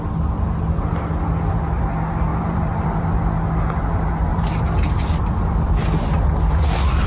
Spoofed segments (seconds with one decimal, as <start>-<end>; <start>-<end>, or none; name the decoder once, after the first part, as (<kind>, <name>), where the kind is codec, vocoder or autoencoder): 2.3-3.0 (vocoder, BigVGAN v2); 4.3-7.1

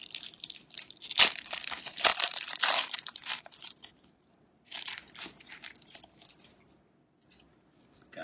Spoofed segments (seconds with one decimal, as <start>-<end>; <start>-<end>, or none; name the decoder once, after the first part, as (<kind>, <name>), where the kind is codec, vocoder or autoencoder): 2.1-4.7 (vocoder, BigVGAN v2)

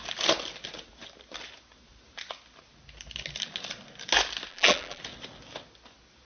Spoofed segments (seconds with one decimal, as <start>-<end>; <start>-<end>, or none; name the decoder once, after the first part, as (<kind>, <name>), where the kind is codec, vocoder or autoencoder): 4.5-5.0 (vocoder, BigVGAN v2)